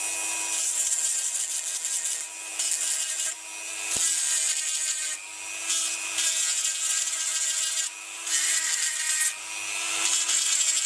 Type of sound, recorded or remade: recorded